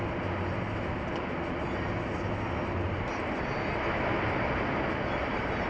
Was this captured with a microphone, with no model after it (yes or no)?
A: yes